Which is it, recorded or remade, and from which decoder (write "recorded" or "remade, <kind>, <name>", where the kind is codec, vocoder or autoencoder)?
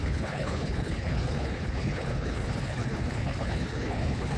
remade, codec, HILCodec